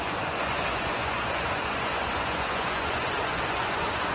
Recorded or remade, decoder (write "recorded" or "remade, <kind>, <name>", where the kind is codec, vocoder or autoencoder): remade, vocoder, Vocos